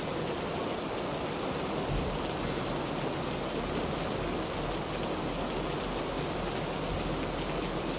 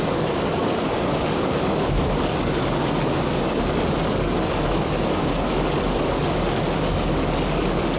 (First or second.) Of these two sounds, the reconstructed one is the second